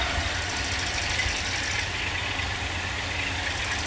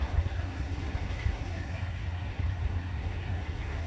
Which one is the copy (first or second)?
second